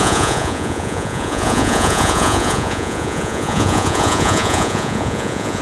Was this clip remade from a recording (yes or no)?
yes